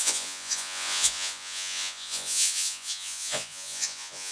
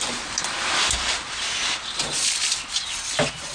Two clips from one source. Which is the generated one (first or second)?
first